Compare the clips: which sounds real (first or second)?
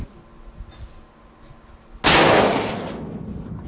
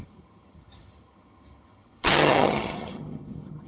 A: first